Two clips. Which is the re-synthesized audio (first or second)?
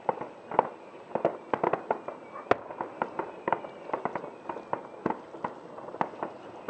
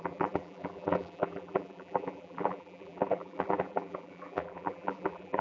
second